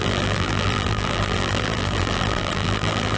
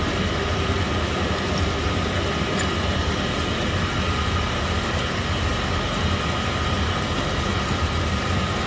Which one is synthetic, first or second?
first